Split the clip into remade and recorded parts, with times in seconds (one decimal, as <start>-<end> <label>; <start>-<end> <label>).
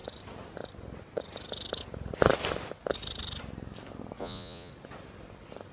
0.0-4.2 recorded; 4.2-4.7 remade; 4.7-5.7 recorded